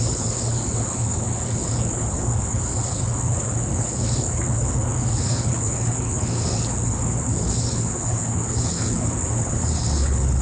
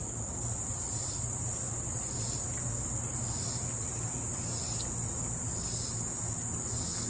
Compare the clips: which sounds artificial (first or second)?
first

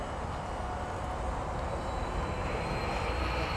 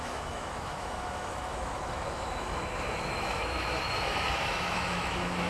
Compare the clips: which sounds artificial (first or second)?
second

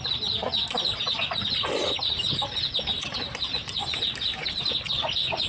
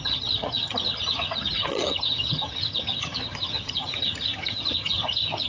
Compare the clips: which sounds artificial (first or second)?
second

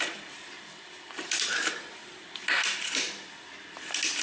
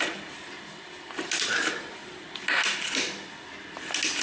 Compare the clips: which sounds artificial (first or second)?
first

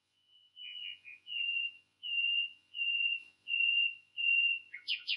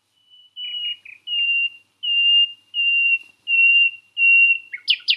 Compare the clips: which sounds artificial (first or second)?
first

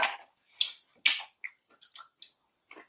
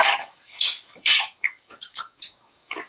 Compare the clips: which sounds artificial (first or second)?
second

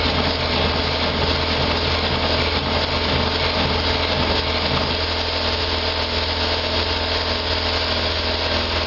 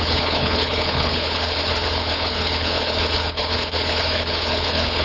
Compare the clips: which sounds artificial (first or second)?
second